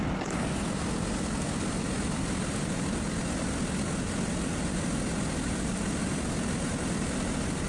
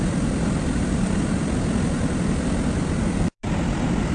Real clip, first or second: first